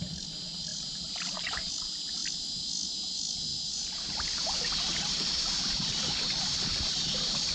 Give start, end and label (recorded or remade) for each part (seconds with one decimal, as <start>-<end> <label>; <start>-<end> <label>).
0.0-0.7 recorded; 0.7-1.7 remade; 1.7-3.5 recorded; 3.5-7.5 remade

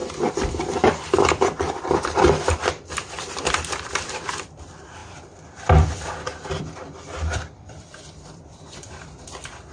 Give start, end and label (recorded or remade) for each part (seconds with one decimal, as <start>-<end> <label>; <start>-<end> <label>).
0.0-5.0 remade; 5.0-6.6 recorded; 6.6-9.7 remade

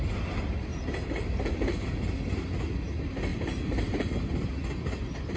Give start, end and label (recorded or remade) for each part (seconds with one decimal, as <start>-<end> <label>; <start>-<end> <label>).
0.0-0.7 recorded; 0.7-2.0 remade; 2.0-3.3 recorded; 3.3-4.5 remade; 4.5-5.4 recorded

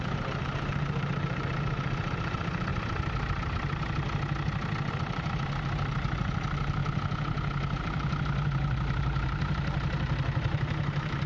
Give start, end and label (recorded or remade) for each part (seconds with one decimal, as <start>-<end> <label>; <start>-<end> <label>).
0.0-2.7 remade; 2.7-4.9 recorded; 4.9-6.8 remade; 6.8-7.8 recorded; 7.8-11.3 remade

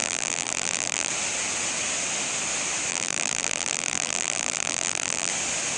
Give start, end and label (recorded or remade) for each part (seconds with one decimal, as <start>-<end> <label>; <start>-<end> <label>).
0.0-1.1 remade; 1.1-2.9 recorded; 2.9-5.3 remade; 5.3-5.8 recorded

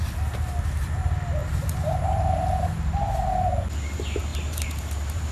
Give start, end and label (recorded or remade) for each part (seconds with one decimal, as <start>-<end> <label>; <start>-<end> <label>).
0.0-1.4 recorded; 1.4-2.2 remade; 2.2-4.3 recorded; 4.3-5.3 remade